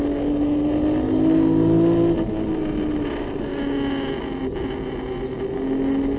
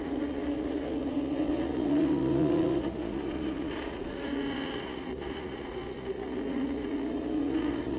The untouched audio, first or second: first